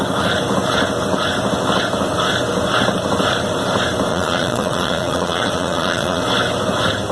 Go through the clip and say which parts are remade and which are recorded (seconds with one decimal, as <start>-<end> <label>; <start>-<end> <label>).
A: 0.0-4.1 recorded; 4.1-6.2 remade; 6.2-7.1 recorded